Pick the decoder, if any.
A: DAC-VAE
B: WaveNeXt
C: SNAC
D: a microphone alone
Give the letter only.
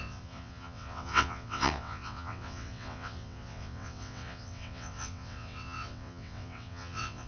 B